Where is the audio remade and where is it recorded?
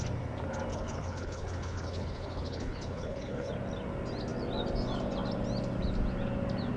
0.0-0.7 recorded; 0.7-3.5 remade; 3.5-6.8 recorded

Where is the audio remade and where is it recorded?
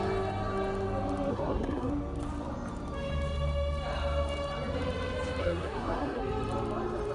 0.0-1.3 recorded; 1.3-1.9 remade; 1.9-5.4 recorded; 5.4-6.2 remade; 6.2-7.1 recorded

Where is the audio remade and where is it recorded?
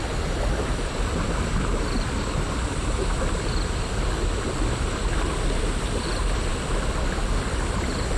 0.0-8.2 remade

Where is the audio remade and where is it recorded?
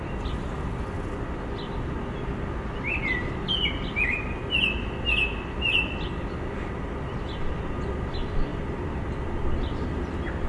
0.0-10.5 recorded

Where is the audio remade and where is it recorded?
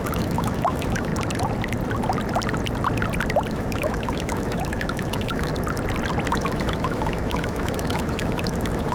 0.0-1.1 remade; 1.1-3.5 recorded; 3.5-5.5 remade; 5.5-6.3 recorded; 6.3-8.9 remade